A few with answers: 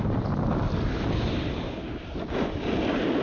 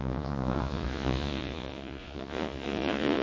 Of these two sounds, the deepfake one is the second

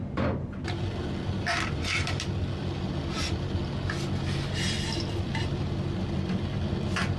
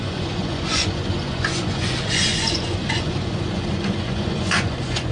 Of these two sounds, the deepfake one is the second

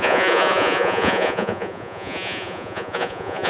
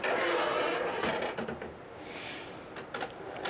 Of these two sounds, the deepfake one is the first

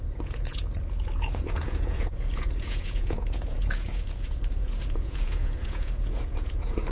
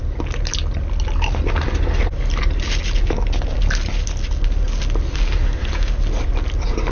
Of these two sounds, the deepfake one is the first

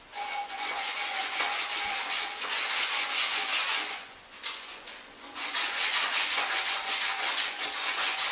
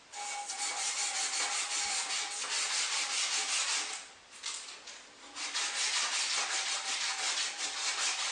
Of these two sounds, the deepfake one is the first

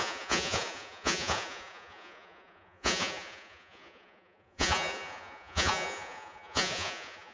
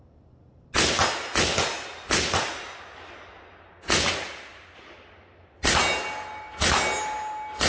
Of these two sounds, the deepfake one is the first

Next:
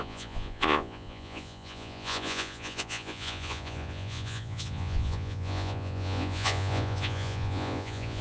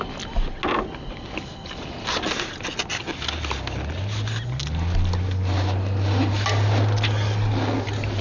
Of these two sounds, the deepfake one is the first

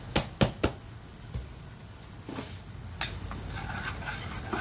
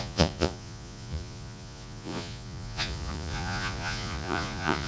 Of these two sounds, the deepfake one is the second